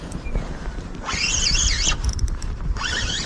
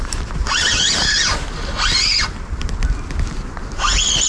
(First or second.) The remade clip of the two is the first